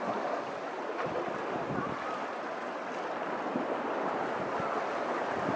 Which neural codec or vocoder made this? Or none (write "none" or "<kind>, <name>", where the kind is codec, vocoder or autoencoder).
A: none